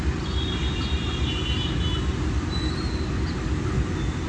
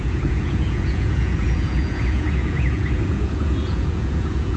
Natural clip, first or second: first